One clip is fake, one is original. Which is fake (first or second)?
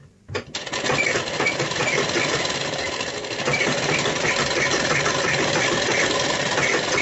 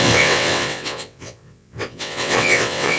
second